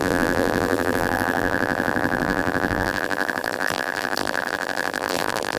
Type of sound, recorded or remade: remade